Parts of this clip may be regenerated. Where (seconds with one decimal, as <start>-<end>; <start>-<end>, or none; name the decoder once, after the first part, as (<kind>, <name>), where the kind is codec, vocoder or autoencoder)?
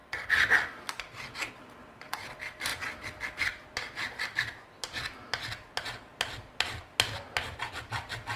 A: 0.0-2.7 (vocoder, BigVGAN v2); 7.7-8.4